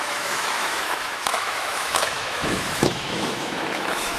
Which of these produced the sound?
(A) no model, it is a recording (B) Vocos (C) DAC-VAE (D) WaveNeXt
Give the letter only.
C